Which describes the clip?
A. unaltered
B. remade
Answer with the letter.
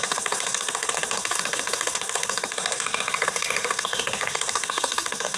B